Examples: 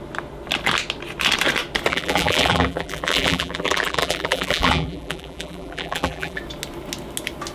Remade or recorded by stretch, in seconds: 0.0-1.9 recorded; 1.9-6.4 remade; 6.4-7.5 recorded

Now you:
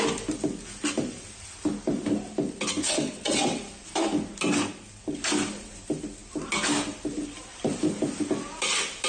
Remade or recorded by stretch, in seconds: 0.0-2.8 recorded; 2.8-3.6 remade; 3.6-9.1 recorded

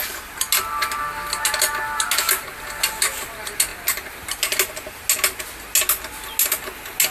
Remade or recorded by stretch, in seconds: 0.0-7.1 recorded

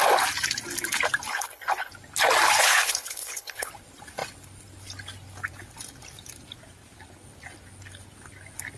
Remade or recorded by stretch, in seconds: 0.0-1.3 recorded; 1.3-1.9 remade; 1.9-2.6 recorded; 2.6-3.7 remade; 3.7-8.8 recorded

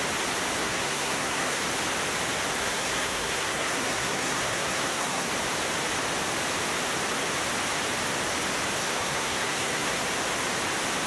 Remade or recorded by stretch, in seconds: 0.0-0.6 recorded; 0.6-1.6 remade; 1.6-2.6 recorded; 2.6-5.3 remade; 5.3-8.8 recorded; 8.8-10.0 remade; 10.0-11.1 recorded

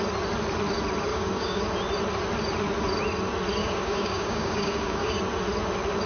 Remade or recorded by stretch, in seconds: 0.0-1.1 recorded; 1.1-1.6 remade; 1.6-3.6 recorded; 3.6-5.2 remade; 5.2-6.1 recorded

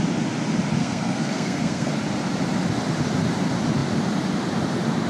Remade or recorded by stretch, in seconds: 0.0-0.8 recorded; 0.8-1.9 remade; 1.9-5.1 recorded